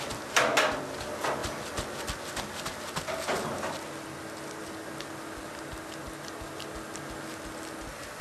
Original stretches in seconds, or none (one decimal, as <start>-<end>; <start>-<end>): 0.0-8.2